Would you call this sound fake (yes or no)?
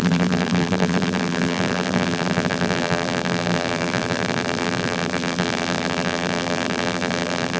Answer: yes